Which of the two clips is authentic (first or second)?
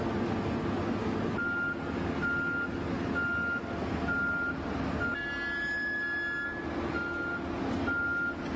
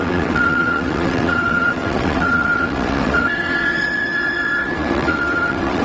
first